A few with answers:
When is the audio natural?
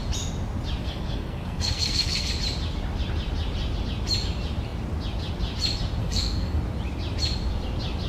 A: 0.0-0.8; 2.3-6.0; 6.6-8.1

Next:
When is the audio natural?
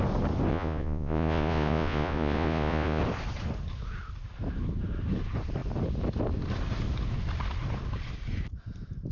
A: 0.0-0.5; 3.0-9.1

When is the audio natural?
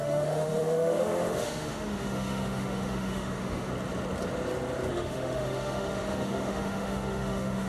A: 3.7-4.9